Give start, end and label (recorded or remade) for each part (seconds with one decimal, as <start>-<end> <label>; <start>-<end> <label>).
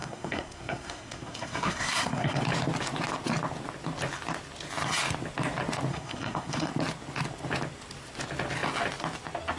0.0-2.4 remade; 2.4-5.9 recorded; 5.9-6.7 remade; 6.7-9.6 recorded